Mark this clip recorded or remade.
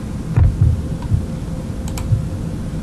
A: recorded